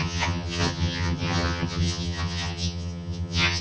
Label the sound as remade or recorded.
remade